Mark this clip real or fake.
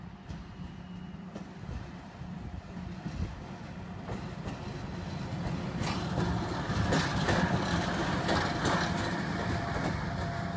real